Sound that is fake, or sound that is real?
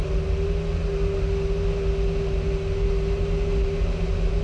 real